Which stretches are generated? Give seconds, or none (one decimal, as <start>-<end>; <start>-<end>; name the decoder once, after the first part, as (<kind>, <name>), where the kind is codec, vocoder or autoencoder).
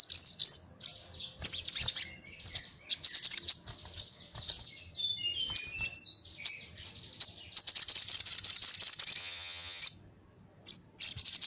9.2-9.8 (vocoder, HiFi-GAN)